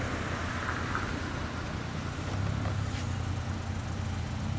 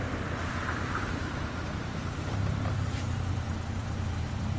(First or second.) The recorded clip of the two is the first